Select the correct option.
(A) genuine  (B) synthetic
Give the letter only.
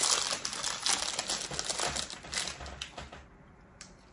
A